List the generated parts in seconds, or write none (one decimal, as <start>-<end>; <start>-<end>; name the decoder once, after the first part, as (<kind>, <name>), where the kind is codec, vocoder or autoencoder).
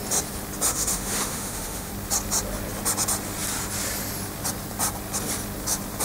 0.7-1.9 (autoencoder, DAC-VAE)